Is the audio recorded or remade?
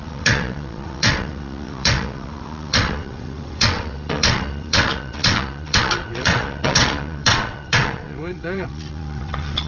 remade